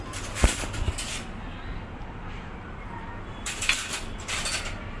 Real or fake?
fake